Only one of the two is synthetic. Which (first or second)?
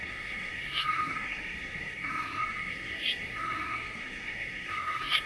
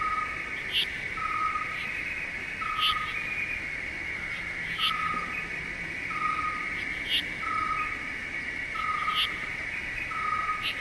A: first